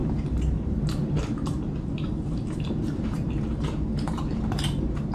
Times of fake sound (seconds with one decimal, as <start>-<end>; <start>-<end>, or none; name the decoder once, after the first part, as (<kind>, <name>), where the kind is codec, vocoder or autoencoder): 0.0-5.1 (vocoder, BigVGAN v2)